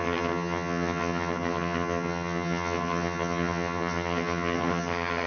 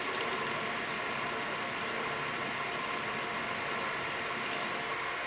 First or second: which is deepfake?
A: first